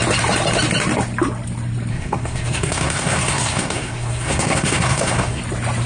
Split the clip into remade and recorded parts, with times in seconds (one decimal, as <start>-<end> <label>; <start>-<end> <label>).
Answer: 0.0-1.9 recorded; 1.9-5.4 remade; 5.4-5.9 recorded

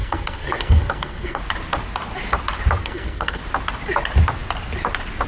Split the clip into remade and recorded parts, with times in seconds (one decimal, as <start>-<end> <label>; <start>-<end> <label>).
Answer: 0.0-1.4 remade; 1.4-2.8 recorded; 2.8-3.4 remade; 3.4-5.3 recorded